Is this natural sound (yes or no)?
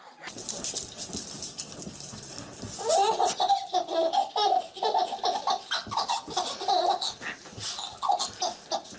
yes